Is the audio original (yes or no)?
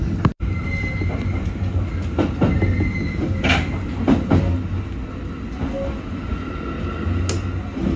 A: yes